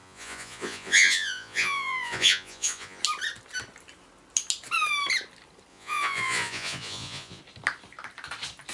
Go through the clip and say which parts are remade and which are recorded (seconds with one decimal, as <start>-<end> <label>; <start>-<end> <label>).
0.0-3.0 remade; 3.0-5.7 recorded; 5.7-7.4 remade; 7.4-8.7 recorded